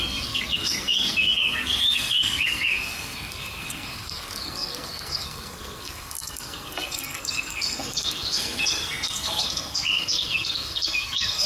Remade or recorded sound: remade